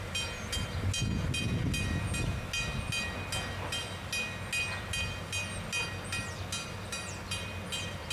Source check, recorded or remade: recorded